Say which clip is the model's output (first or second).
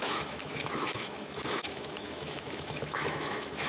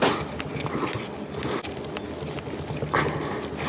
first